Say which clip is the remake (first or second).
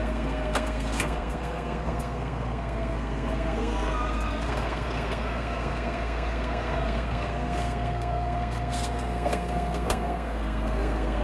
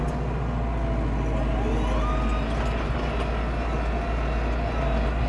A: first